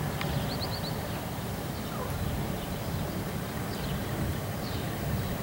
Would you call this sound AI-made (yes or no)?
yes